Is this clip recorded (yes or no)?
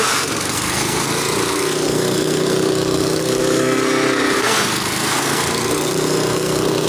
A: no